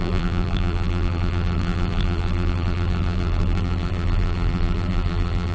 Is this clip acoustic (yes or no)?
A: no